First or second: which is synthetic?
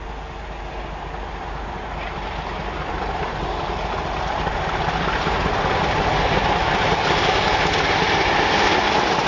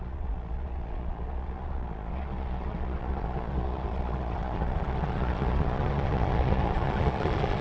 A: second